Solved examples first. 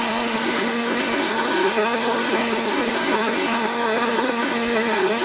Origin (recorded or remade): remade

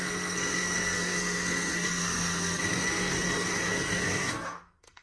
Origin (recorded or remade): remade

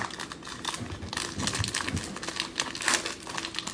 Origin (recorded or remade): recorded